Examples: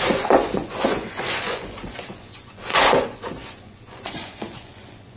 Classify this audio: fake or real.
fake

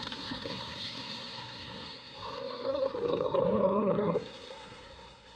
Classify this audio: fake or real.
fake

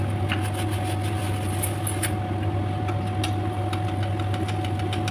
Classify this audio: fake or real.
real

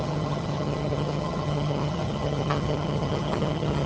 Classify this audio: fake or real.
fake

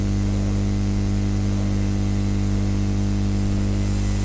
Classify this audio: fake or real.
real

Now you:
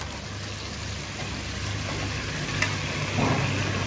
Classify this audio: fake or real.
real